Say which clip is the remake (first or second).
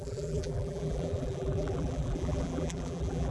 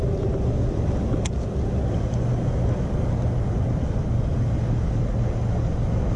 first